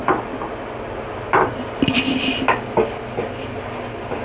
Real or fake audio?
real